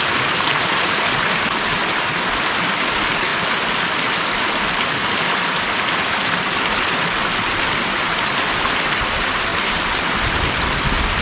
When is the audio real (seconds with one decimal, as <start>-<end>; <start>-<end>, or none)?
0.0-11.2